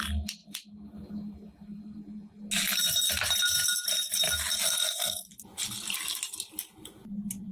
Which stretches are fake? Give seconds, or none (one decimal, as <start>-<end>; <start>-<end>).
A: 0.4-1.1